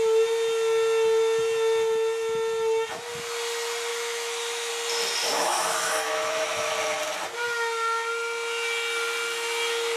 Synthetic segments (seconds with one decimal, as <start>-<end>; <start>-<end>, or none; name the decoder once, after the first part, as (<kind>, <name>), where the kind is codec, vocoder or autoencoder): 3.9-4.7 (autoencoder, DAC-VAE); 5.3-6.7